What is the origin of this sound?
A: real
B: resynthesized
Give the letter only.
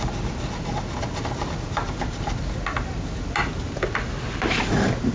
A